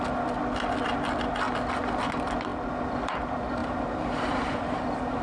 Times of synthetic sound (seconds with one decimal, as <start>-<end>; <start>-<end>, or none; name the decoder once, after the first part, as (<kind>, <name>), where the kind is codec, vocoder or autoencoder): 3.6-5.2 (vocoder, BigVGAN v2)